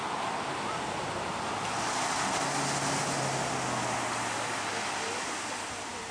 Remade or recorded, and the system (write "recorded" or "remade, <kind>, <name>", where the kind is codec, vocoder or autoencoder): recorded